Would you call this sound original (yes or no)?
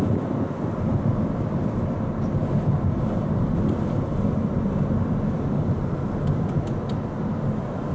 yes